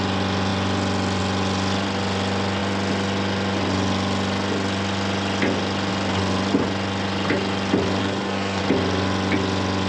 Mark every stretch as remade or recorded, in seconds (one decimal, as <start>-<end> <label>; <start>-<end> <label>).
0.0-8.0 recorded; 8.0-8.6 remade; 8.6-9.9 recorded